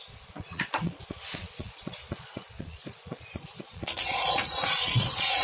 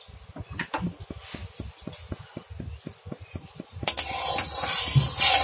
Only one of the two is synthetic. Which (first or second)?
first